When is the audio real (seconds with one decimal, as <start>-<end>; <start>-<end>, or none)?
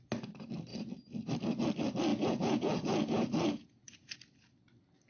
0.0-2.1; 4.1-5.1